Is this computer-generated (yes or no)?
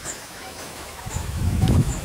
yes